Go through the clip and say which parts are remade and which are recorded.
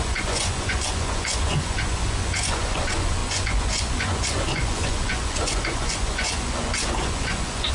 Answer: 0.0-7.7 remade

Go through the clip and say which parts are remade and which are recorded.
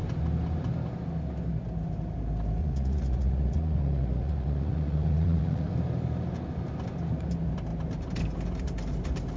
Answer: 0.0-2.6 recorded; 2.6-5.7 remade; 5.7-9.4 recorded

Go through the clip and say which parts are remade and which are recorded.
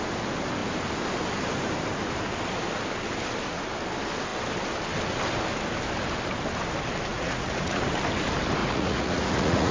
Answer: 0.0-7.1 recorded; 7.1-7.8 remade; 7.8-8.6 recorded; 8.6-9.7 remade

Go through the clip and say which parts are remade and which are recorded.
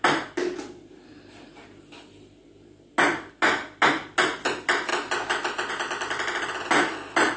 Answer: 0.0-7.4 recorded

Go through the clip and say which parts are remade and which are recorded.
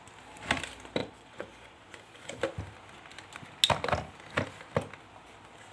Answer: 0.0-1.0 recorded; 1.0-2.4 remade; 2.4-5.7 recorded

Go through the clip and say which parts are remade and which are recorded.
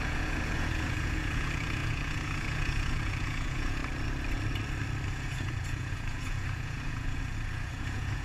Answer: 0.0-3.8 remade; 3.8-5.1 recorded; 5.1-8.2 remade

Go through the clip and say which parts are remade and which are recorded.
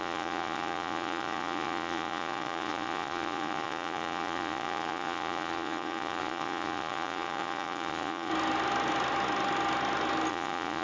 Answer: 0.0-8.3 remade; 8.3-10.3 recorded; 10.3-10.8 remade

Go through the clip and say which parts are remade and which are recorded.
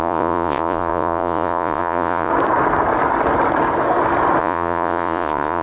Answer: 0.0-2.3 remade; 2.3-4.4 recorded; 4.4-5.6 remade